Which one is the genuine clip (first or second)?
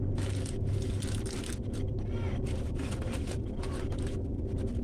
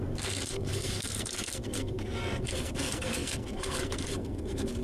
first